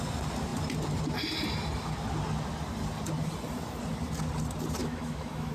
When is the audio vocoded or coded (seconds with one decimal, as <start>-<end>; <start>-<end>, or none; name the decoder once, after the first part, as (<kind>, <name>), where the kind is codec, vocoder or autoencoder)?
4.8-5.5 (autoencoder, DAC-VAE)